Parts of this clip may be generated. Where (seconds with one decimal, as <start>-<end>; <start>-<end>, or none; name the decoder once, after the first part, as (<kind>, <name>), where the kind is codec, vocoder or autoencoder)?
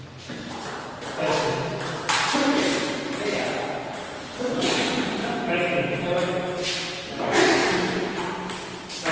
none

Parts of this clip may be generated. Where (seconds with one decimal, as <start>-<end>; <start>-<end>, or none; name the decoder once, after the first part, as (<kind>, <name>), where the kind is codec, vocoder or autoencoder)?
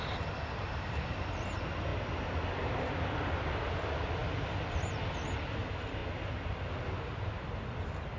none